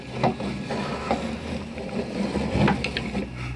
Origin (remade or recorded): recorded